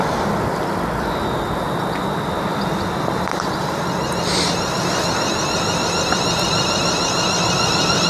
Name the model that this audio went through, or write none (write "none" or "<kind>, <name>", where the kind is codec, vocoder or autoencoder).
vocoder, BigVGAN v2